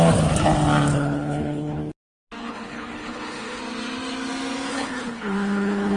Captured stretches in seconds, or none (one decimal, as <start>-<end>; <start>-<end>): 0.0-0.9; 1.8-2.4; 3.6-4.7

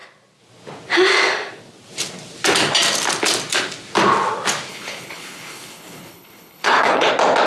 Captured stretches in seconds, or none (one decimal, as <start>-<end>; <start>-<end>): 0.0-4.7; 7.1-7.5

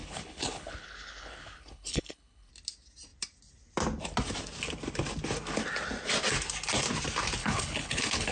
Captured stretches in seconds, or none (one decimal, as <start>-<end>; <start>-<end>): 2.5-7.4

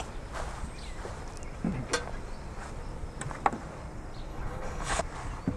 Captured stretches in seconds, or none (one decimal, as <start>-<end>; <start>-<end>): 0.0-4.3; 5.0-5.6

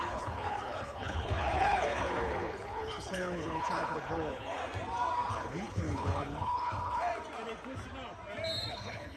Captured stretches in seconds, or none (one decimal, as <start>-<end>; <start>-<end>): 4.6-5.3; 7.1-8.7

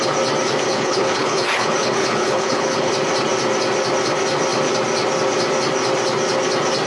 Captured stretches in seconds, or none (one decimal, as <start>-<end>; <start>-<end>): 0.0-0.7; 2.9-6.9